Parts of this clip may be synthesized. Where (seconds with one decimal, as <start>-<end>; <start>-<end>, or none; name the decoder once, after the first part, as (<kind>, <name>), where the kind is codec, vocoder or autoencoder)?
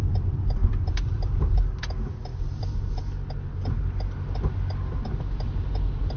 0.6-1.6 (vocoder, BigVGAN v2); 2.3-3.0